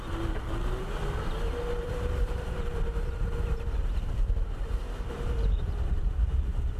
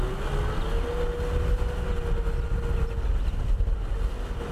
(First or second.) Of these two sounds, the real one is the second